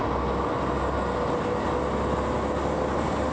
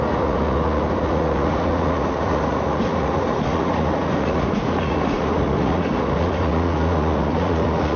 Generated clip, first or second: second